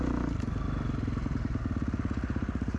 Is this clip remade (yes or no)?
no